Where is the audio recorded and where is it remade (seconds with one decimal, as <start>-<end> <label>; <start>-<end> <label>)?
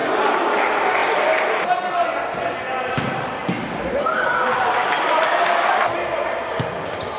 0.0-7.2 recorded